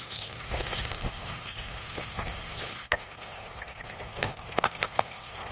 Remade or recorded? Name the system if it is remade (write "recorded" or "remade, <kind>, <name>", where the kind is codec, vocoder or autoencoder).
remade, codec, SNAC